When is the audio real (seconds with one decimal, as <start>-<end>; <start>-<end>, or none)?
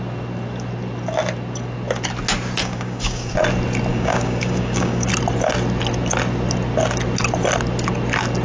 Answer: 0.0-2.6; 3.3-3.9; 5.1-8.4